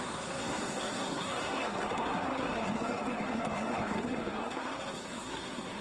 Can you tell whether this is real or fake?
fake